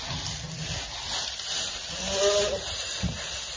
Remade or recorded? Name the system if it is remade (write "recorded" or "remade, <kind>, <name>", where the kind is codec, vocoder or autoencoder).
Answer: recorded